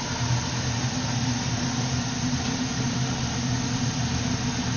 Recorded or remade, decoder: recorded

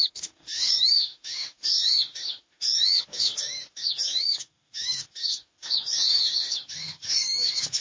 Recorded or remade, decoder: remade, autoencoder, DAC-VAE